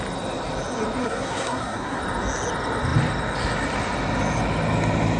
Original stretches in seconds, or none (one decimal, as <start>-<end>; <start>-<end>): 0.0-1.0; 2.0-5.2